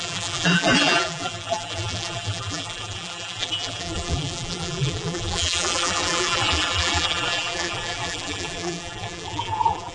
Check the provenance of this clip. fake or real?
fake